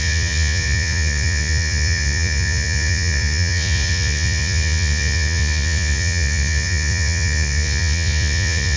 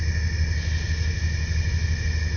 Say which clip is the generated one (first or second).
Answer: first